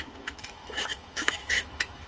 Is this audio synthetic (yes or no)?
yes